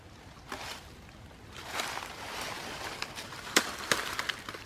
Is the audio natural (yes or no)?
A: yes